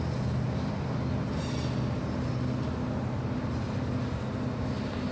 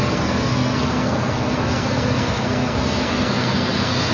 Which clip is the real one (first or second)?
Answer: first